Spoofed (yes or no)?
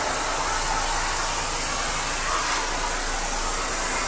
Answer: no